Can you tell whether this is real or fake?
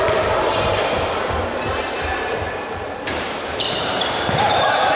fake